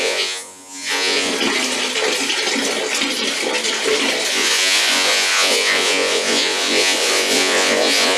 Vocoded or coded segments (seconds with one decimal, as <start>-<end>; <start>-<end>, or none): 0.0-1.3; 4.3-8.2